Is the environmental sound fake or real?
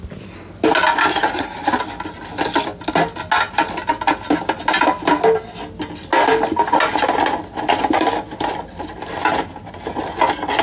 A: real